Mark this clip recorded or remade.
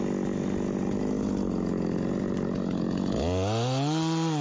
recorded